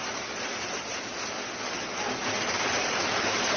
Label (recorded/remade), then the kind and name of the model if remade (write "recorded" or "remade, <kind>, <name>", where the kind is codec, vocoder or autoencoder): remade, vocoder, BigVGAN v2